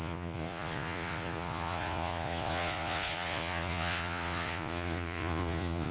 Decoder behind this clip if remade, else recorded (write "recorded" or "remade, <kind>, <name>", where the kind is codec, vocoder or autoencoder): remade, vocoder, Vocos